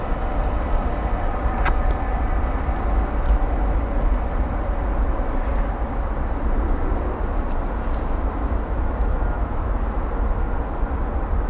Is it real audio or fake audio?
real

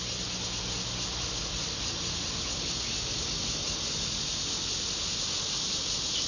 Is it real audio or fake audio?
real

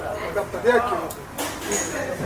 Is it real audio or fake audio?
real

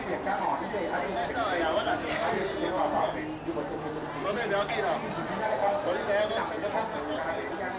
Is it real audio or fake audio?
real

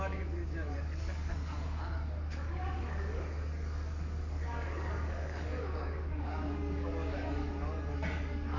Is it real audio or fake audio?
fake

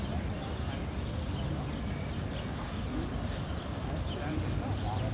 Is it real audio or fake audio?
real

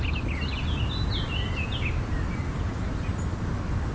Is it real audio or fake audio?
real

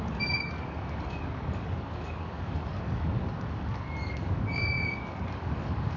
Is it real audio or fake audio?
fake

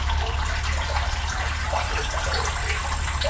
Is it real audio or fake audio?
real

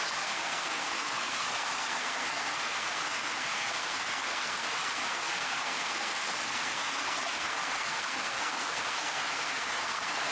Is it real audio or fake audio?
fake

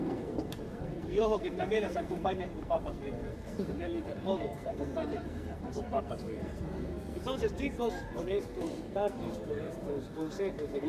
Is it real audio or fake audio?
fake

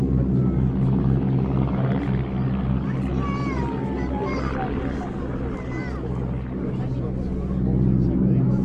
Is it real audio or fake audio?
real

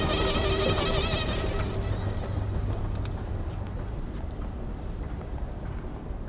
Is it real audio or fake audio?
real